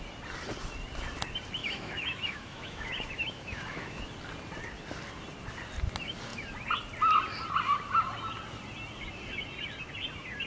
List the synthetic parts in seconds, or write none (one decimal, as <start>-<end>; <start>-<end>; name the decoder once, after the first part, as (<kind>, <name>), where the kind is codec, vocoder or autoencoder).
1.6-4.0 (autoencoder, DAC-VAE)